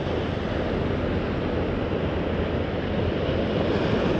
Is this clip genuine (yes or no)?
yes